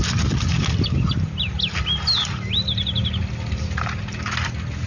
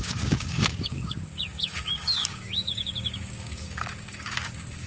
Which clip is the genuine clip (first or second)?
first